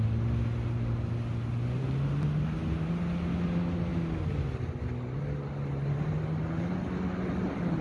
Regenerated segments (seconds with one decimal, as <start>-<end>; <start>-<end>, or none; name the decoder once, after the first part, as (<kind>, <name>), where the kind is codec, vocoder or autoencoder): none